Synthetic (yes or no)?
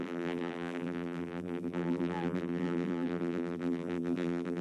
yes